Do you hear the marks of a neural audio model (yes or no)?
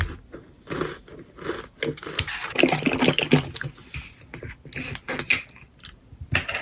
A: no